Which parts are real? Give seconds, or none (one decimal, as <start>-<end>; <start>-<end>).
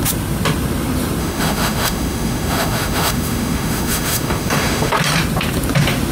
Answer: 0.0-1.2; 4.9-6.1